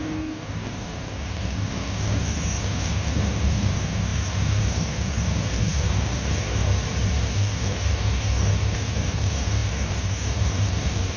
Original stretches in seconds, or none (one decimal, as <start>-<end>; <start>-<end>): 6.7-7.2